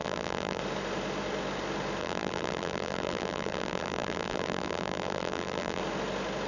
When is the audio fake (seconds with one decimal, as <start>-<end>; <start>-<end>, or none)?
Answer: 0.0-0.6; 2.0-5.8